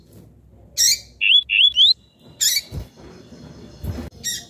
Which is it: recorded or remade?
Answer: recorded